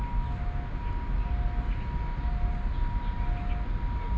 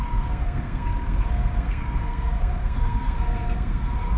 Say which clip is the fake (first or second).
second